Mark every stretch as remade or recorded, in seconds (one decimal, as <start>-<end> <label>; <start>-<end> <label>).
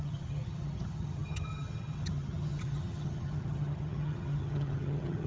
0.0-5.3 remade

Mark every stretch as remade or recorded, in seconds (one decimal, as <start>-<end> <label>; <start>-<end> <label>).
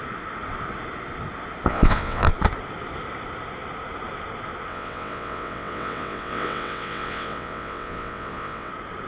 0.0-1.7 recorded; 1.7-2.3 remade; 2.3-4.7 recorded; 4.7-8.7 remade; 8.7-9.1 recorded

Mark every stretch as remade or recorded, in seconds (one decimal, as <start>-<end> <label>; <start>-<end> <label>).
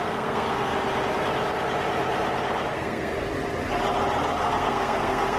0.0-0.7 remade; 0.7-2.7 recorded; 2.7-3.1 remade; 3.1-4.5 recorded; 4.5-5.4 remade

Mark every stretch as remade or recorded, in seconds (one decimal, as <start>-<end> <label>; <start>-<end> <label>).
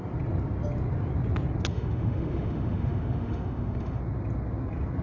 0.0-1.7 recorded; 1.7-4.0 remade; 4.0-5.0 recorded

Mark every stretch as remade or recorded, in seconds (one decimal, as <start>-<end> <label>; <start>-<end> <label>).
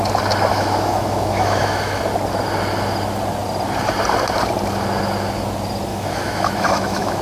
0.0-0.5 recorded; 0.5-2.0 remade; 2.0-5.9 recorded; 5.9-7.2 remade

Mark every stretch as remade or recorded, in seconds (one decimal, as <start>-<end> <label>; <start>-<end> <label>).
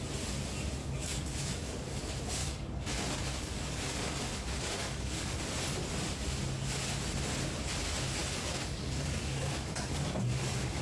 0.0-0.8 recorded; 0.8-2.0 remade; 2.0-2.4 recorded; 2.4-5.4 remade; 5.4-8.2 recorded; 8.2-10.8 remade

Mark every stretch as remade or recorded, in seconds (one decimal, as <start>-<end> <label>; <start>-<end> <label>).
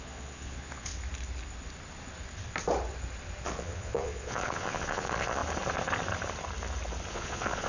0.0-0.9 remade; 0.9-3.4 recorded; 3.4-5.4 remade; 5.4-7.1 recorded; 7.1-7.7 remade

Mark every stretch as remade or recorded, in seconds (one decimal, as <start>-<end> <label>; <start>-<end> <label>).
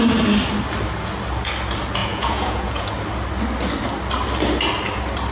0.0-2.0 recorded; 2.0-2.9 remade; 2.9-5.3 recorded